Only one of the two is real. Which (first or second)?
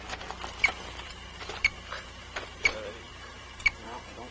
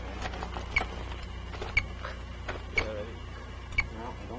second